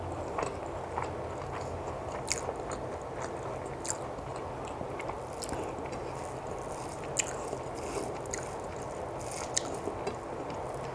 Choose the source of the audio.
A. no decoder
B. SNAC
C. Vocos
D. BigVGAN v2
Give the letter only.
A